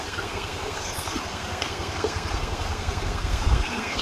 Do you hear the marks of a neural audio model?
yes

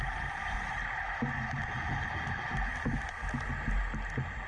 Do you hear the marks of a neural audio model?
no